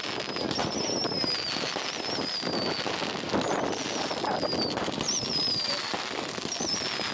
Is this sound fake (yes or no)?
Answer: no